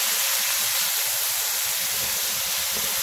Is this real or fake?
real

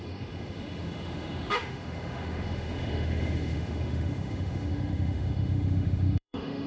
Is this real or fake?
fake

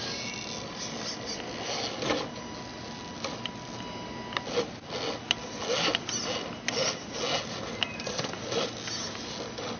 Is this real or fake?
real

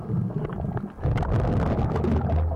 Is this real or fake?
real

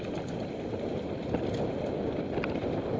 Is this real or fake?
real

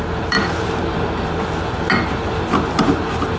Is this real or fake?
real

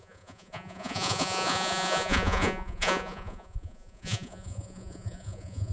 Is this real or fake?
fake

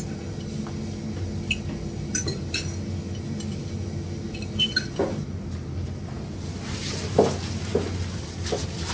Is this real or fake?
real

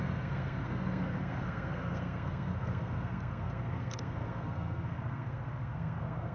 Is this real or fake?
fake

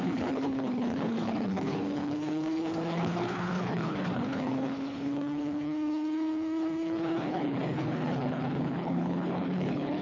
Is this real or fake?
fake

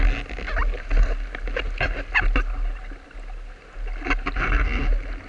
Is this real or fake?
real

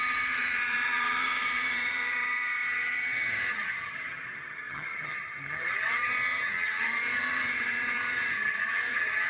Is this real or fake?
fake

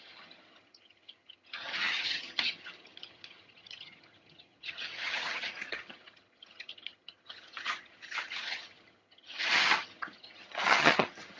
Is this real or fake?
fake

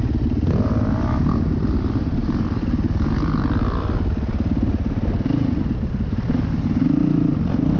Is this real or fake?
real